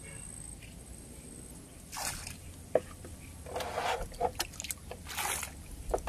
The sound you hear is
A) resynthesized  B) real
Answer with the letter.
B